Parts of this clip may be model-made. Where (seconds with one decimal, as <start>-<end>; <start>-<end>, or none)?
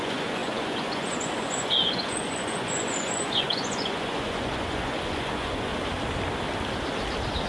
0.0-5.7